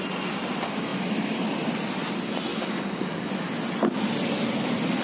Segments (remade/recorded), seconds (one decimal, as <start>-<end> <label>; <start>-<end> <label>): 0.0-2.5 recorded; 2.5-3.3 remade; 3.3-5.0 recorded